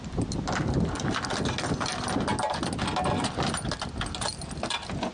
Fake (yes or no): no